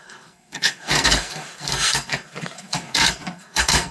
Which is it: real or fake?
fake